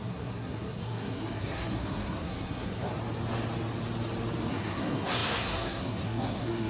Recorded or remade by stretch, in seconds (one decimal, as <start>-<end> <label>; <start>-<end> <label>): 0.0-2.9 remade; 2.9-4.5 recorded; 4.5-6.7 remade